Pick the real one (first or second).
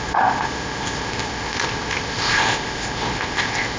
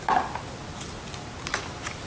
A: second